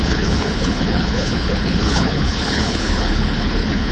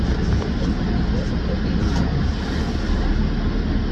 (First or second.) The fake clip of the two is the first